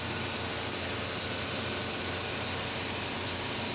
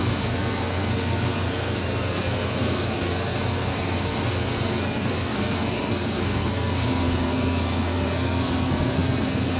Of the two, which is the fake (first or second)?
second